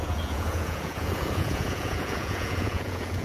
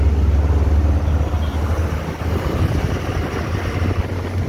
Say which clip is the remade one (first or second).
first